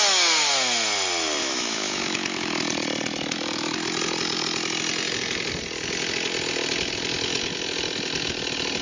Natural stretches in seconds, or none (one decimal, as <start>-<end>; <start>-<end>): 0.0-1.4; 2.5-8.8